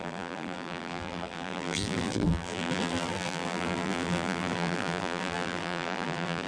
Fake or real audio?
fake